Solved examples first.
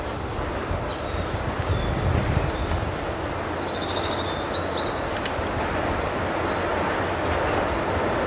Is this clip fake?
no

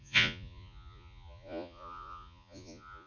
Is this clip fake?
yes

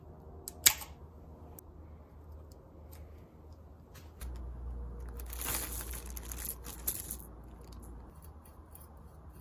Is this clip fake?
no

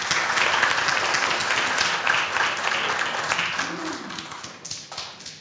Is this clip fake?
no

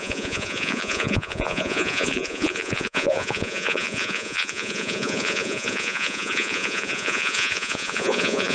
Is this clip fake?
yes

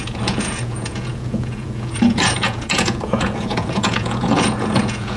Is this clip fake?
yes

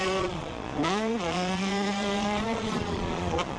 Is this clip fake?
yes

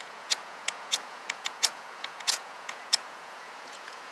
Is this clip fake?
yes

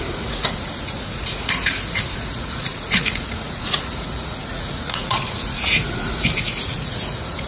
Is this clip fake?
yes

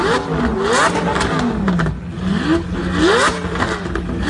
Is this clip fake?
no